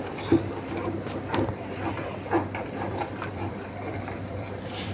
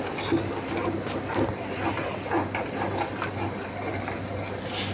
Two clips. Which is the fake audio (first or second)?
first